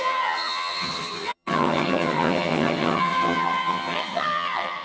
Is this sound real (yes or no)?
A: no